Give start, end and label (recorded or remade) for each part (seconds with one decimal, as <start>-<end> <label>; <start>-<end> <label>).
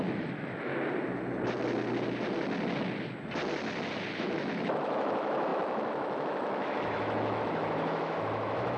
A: 0.0-0.7 remade; 0.7-4.2 recorded; 4.2-8.8 remade